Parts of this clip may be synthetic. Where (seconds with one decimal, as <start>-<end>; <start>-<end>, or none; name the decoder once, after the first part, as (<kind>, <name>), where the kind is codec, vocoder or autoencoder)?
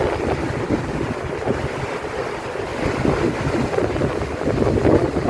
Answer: none